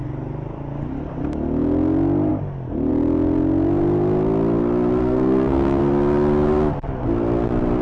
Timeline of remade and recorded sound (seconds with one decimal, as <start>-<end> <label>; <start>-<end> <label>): 0.0-5.0 recorded; 5.0-5.8 remade; 5.8-7.8 recorded